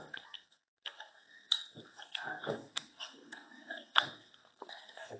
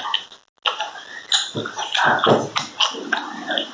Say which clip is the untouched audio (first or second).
second